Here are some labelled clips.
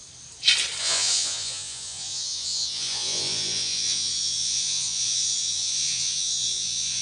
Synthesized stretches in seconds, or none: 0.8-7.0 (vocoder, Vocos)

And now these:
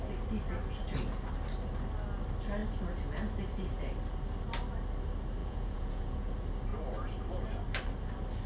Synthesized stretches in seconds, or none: 5.4-6.3 (vocoder, Vocos)